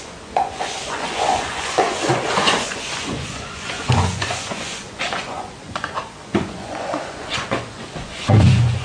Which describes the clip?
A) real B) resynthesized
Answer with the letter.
B